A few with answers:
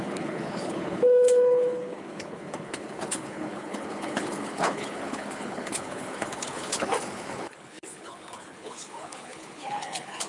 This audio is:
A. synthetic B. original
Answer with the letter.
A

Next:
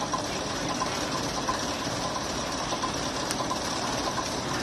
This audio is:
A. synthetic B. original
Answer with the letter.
A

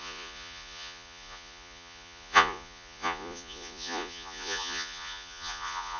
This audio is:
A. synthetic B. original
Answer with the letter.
A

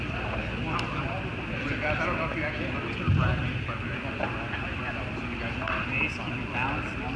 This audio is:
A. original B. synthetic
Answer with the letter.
A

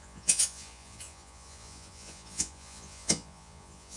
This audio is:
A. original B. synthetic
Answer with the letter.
B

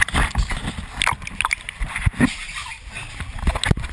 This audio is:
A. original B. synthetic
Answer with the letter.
A